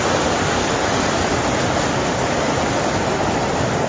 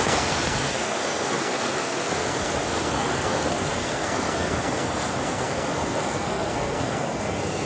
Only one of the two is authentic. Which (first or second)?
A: first